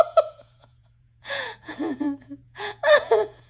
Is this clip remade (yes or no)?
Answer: yes